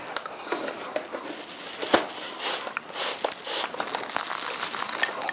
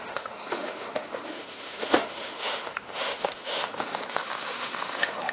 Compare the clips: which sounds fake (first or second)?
second